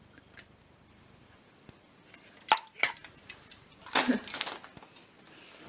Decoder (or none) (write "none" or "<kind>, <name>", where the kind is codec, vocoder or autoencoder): none